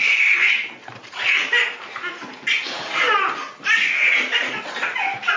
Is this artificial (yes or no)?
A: no